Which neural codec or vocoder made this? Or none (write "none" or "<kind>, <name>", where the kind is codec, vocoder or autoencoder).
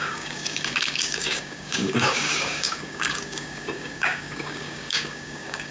codec, DAC